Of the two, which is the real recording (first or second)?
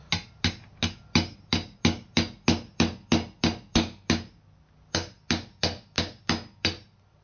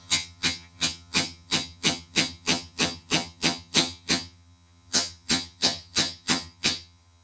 first